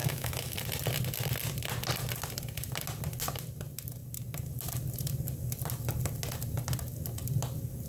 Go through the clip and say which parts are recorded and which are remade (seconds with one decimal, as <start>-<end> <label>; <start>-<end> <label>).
0.0-0.6 remade; 0.6-7.9 recorded